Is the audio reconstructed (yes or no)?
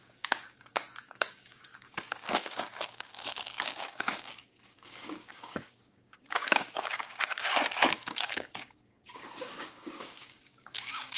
yes